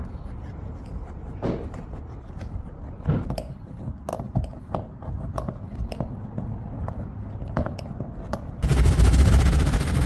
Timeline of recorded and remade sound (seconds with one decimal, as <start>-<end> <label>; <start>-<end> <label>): 0.0-4.1 recorded; 4.1-4.6 remade; 4.6-7.1 recorded; 7.1-8.0 remade; 8.0-10.1 recorded